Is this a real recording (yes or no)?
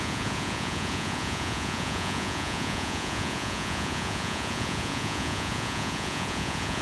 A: no